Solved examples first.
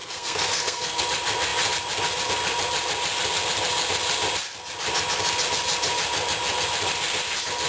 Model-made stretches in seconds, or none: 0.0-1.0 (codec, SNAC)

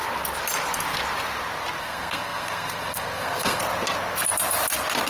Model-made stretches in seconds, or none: 1.8-3.6 (codec, SNAC)

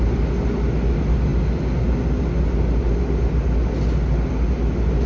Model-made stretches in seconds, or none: none

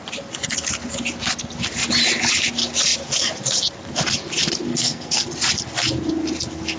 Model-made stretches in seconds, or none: 4.7-5.2 (codec, SNAC)